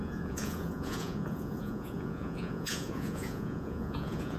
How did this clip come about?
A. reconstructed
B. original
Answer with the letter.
A